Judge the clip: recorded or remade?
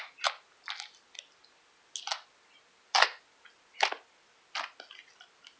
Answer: recorded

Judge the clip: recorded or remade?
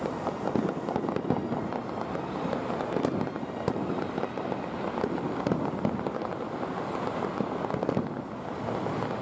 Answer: recorded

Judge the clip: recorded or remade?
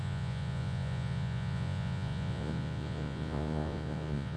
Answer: remade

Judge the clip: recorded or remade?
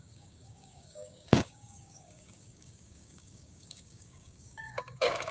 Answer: remade